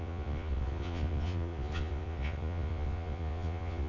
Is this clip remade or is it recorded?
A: remade